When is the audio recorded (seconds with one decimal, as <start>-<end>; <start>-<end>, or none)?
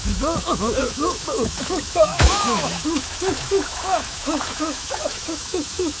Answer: none